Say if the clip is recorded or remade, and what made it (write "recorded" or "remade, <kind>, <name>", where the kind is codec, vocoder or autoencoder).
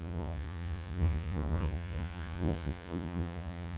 remade, vocoder, Vocos